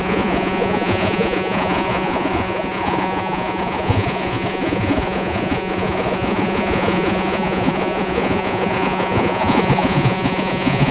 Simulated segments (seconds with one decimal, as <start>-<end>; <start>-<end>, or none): 0.0-10.9